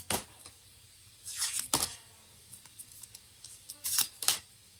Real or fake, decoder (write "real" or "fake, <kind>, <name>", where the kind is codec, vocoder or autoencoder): fake, codec, DAC